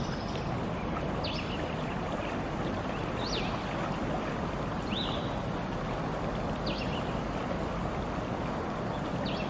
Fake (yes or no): no